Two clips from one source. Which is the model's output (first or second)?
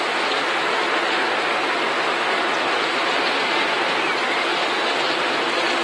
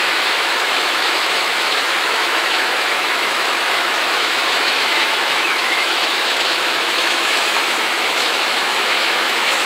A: second